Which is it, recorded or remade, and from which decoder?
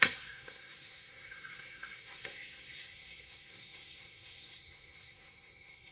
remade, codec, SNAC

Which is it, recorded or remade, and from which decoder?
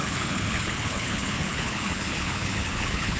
remade, codec, HILCodec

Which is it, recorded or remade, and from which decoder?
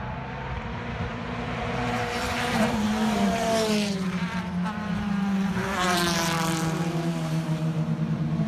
remade, vocoder, BigVGAN v2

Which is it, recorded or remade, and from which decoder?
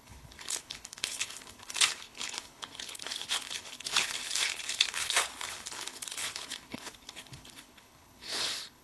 remade, codec, HILCodec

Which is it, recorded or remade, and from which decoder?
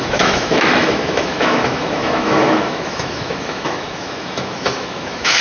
remade, autoencoder, DAC-VAE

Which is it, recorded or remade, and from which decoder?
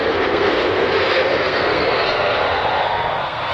remade, codec, SNAC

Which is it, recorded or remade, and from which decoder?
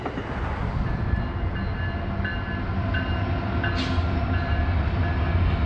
recorded